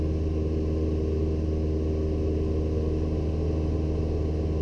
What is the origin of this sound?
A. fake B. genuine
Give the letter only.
B